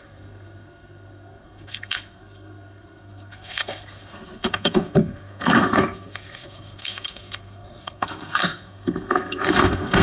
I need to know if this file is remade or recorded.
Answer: remade